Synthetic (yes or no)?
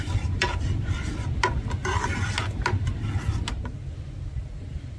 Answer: no